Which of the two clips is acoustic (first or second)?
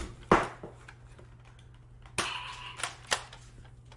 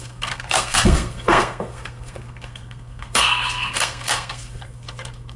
first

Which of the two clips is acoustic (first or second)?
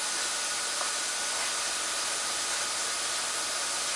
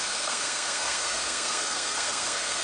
first